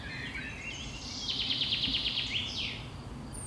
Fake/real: real